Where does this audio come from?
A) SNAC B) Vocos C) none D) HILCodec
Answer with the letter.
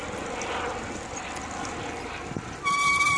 C